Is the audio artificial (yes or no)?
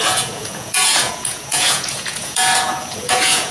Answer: yes